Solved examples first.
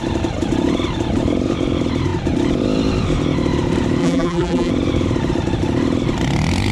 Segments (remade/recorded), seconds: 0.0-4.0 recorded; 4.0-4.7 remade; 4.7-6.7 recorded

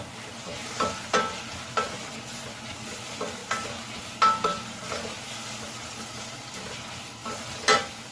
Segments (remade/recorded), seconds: 0.0-0.5 remade; 0.5-2.1 recorded; 2.1-3.4 remade; 3.4-5.5 recorded; 5.5-8.1 remade

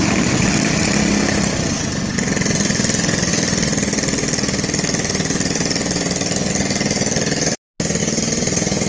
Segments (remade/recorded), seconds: 0.0-8.0 recorded; 8.0-8.9 remade

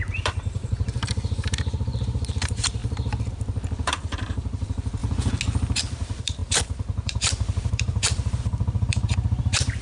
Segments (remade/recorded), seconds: 0.0-2.8 remade; 2.8-3.3 recorded; 3.3-5.0 remade; 5.0-5.8 recorded; 5.8-9.8 remade

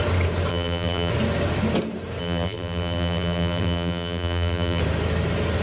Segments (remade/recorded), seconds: 0.0-0.5 recorded; 0.5-1.1 remade; 1.1-2.2 recorded; 2.2-4.8 remade; 4.8-5.6 recorded

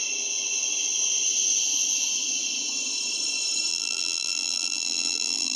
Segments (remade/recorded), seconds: 0.0-3.7 recorded; 3.7-5.6 remade

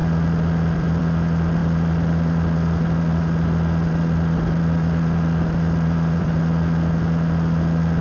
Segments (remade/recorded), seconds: 0.0-1.0 remade; 1.0-1.6 recorded; 1.6-6.4 remade; 6.4-8.0 recorded

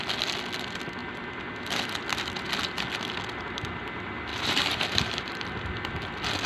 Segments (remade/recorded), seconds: 0.0-4.3 recorded; 4.3-5.4 remade; 5.4-6.5 recorded